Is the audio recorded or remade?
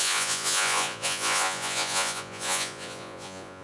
remade